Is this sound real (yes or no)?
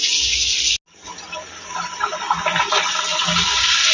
yes